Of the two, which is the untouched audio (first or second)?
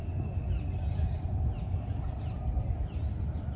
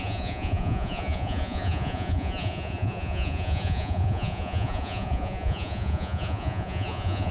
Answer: first